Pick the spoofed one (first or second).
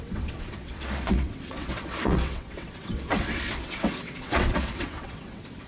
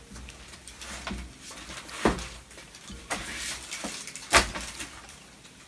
first